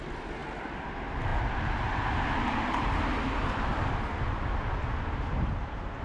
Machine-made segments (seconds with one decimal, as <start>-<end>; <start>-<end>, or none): none